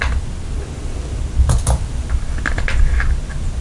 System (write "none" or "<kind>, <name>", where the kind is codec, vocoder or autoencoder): none